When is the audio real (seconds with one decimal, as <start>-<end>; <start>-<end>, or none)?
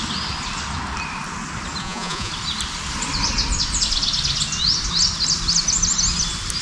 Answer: 0.0-1.8; 2.3-6.6